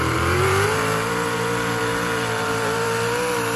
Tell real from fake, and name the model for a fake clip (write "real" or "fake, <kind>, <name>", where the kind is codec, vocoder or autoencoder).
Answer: fake, vocoder, BigVGAN v2